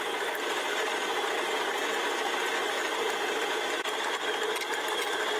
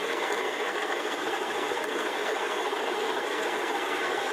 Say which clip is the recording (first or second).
first